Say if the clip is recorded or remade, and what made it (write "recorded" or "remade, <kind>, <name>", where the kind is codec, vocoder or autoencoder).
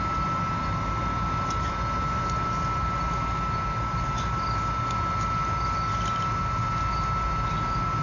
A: recorded